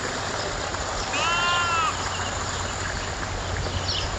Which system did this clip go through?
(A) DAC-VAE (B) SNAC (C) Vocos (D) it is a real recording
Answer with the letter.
D